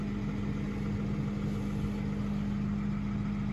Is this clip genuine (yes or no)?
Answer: yes